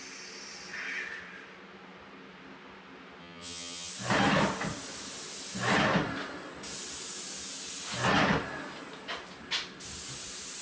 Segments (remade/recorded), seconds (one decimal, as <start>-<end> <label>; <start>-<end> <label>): 0.0-3.2 recorded; 3.2-3.9 remade; 3.9-10.6 recorded